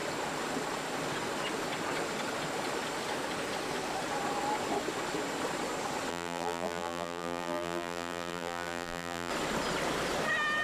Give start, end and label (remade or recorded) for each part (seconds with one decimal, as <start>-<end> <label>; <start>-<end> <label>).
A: 0.0-6.1 recorded; 6.1-9.3 remade; 9.3-10.6 recorded